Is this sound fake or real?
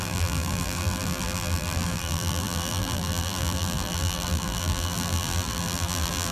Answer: fake